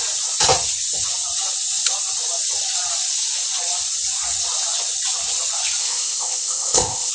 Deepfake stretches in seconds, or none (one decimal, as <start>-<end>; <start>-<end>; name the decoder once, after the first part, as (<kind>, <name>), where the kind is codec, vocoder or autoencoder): 5.8-7.1 (codec, ZipCodec)

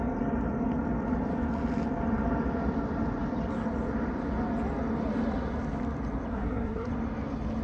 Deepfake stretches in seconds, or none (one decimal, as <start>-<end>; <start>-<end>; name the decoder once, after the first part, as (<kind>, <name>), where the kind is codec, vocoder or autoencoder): 6.3-6.9 (codec, SNAC)

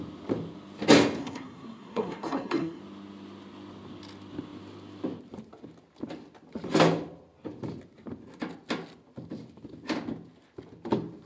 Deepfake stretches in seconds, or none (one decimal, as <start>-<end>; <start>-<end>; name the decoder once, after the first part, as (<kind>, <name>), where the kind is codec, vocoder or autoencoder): 1.2-2.8 (codec, SNAC)

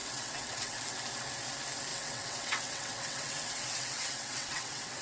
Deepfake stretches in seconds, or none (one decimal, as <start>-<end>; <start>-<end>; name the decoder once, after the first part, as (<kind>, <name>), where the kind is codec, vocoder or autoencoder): 0.0-0.8 (vocoder, WaveNeXt); 1.9-5.0